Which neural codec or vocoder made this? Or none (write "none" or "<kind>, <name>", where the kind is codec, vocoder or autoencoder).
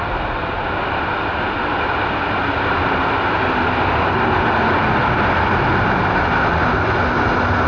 none